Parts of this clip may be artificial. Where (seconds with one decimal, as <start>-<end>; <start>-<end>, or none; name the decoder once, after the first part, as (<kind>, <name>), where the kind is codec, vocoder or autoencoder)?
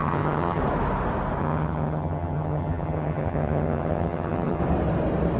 0.0-0.6 (vocoder, HiFi-GAN); 1.4-4.6